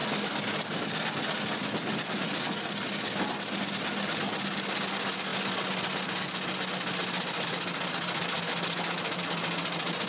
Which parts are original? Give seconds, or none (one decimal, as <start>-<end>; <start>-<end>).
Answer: 0.0-10.1